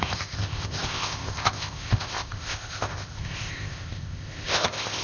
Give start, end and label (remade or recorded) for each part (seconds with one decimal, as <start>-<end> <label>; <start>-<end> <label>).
0.0-5.0 remade